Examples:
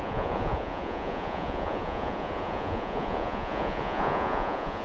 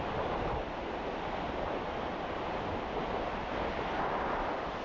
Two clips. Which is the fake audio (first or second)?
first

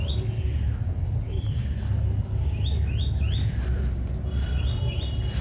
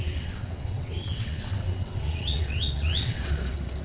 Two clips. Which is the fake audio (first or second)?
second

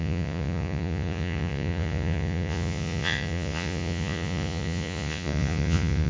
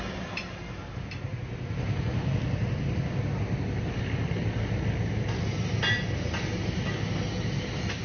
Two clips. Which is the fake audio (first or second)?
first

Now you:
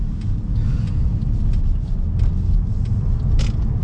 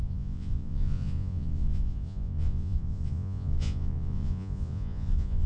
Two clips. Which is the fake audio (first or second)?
second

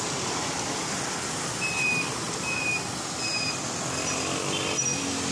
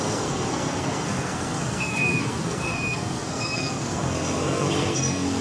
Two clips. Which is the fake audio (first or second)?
second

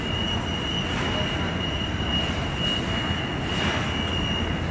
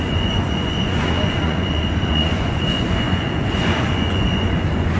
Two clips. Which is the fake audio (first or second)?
second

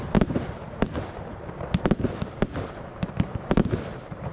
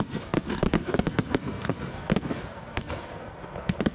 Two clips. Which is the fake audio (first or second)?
second